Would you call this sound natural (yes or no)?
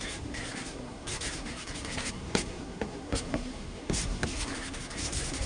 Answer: no